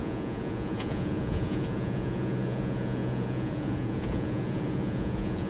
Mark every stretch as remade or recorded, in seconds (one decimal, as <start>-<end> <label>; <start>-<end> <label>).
0.0-5.5 remade